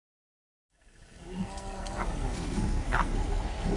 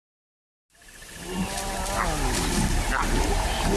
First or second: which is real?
second